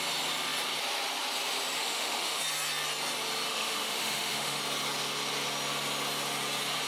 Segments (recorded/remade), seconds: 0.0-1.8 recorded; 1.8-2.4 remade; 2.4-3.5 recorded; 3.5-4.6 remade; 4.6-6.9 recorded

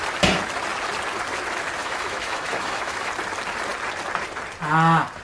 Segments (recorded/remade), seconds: 0.0-1.8 recorded; 1.8-3.1 remade; 3.1-5.2 recorded

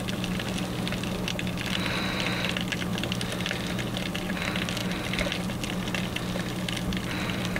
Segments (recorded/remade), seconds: 0.0-7.6 recorded

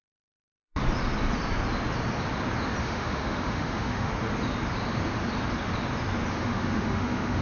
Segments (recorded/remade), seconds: 0.0-0.8 remade; 0.8-2.8 recorded; 2.8-4.1 remade; 4.1-6.3 recorded; 6.3-7.4 remade

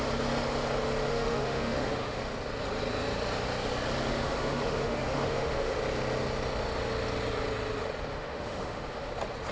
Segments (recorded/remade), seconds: 0.0-1.1 recorded; 1.1-2.2 remade; 2.2-4.1 recorded; 4.1-5.8 remade; 5.8-8.1 recorded; 8.1-9.1 remade; 9.1-9.5 recorded